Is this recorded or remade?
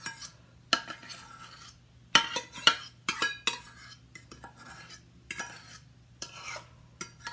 recorded